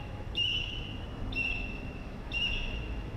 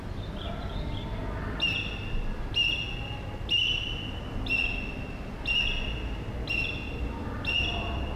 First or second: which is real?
second